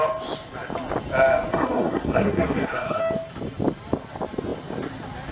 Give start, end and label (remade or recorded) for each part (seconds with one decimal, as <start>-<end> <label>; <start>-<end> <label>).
0.0-1.5 recorded; 1.5-3.0 remade; 3.0-5.3 recorded